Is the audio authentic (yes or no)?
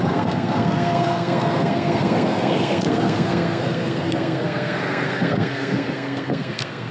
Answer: no